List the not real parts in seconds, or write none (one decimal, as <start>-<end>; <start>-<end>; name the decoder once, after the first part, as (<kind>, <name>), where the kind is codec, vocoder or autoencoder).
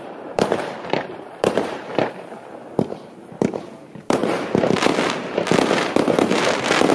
0.0-1.9 (vocoder, BigVGAN v2); 2.8-4.2